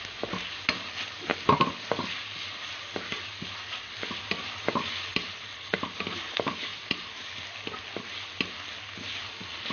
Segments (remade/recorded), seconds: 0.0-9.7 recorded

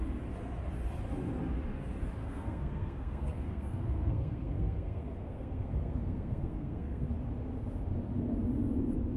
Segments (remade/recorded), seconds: 0.0-2.2 recorded; 2.2-7.1 remade; 7.1-9.2 recorded